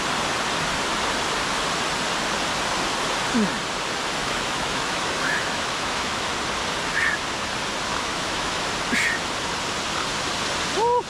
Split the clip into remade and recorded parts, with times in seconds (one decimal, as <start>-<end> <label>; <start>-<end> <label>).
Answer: 0.0-4.2 recorded; 4.2-6.4 remade; 6.4-7.9 recorded; 7.9-8.7 remade; 8.7-11.1 recorded

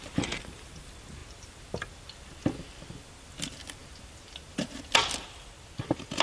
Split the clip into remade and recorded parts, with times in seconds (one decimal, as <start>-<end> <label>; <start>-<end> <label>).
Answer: 0.0-6.2 recorded

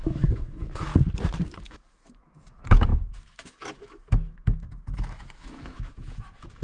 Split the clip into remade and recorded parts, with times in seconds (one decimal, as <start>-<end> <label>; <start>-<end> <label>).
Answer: 0.0-0.9 remade; 0.9-1.6 recorded; 1.6-6.6 remade

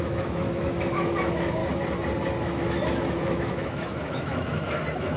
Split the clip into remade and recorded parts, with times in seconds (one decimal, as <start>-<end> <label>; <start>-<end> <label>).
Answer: 0.0-1.6 remade; 1.6-2.4 recorded; 2.4-5.2 remade

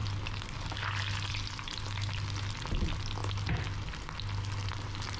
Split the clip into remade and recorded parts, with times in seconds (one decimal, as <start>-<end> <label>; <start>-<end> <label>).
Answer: 0.0-5.2 recorded

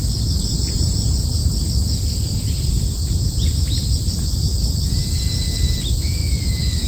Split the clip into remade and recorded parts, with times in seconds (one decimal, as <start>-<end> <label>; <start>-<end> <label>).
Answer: 0.0-6.2 recorded; 6.2-6.9 remade

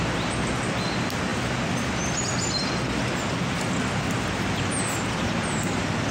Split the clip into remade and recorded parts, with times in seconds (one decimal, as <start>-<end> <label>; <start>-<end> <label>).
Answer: 0.0-6.1 recorded